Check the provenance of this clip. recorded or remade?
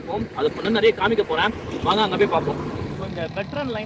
remade